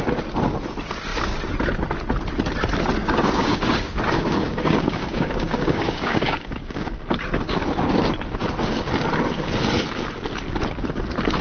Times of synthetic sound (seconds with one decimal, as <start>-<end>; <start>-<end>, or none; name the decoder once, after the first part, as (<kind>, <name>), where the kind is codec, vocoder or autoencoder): 3.0-6.9 (codec, DAC)